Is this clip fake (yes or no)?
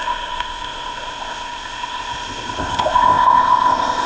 yes